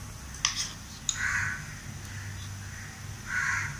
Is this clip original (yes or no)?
yes